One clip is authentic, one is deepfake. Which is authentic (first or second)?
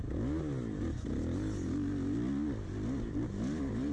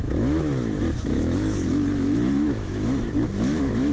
first